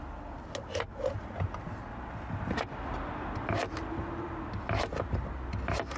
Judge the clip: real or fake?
real